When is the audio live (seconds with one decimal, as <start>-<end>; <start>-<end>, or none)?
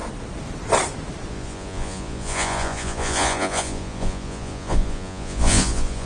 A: 0.0-1.3